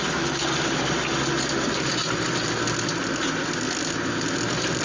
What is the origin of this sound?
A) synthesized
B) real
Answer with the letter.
B